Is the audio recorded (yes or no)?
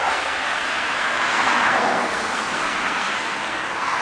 no